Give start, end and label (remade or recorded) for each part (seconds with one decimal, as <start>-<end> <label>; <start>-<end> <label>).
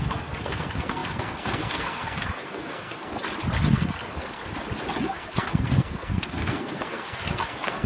0.0-3.1 remade; 3.1-3.7 recorded; 3.7-4.4 remade; 4.4-5.0 recorded; 5.0-7.9 remade